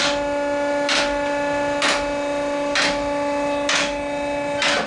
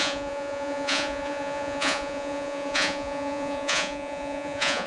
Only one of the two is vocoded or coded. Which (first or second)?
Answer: second